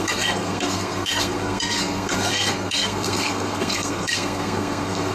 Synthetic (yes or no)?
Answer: yes